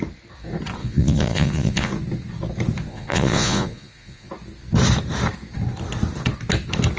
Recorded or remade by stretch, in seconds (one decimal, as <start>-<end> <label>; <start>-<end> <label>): 0.0-0.8 recorded; 0.8-1.9 remade; 1.9-2.9 recorded; 2.9-4.3 remade; 4.3-7.0 recorded